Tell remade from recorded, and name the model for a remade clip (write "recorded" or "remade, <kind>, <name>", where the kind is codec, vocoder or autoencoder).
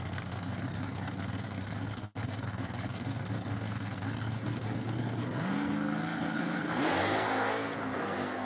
remade, codec, SNAC